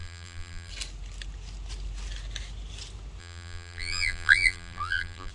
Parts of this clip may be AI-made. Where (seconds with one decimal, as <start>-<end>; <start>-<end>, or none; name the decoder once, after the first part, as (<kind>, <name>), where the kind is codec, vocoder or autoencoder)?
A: 0.0-0.7 (vocoder, BigVGAN v2); 3.2-5.3